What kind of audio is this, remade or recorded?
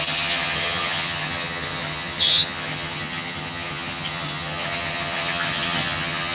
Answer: remade